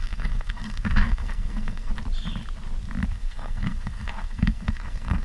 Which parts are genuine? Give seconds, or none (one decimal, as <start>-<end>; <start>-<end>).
1.9-3.1